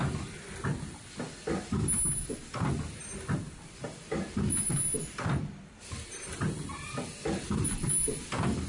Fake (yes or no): no